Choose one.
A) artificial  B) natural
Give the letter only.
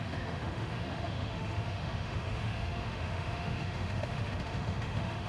A